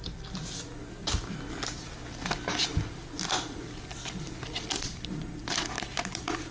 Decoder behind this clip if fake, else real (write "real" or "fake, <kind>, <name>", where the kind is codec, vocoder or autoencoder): fake, vocoder, BigVGAN v2